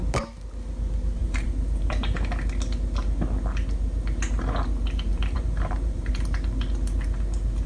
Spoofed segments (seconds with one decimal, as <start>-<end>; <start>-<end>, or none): 1.2-1.9; 5.1-6.1